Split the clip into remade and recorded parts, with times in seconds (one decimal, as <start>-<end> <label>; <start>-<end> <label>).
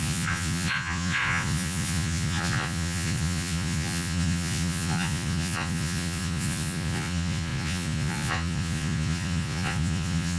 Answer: 0.0-10.4 remade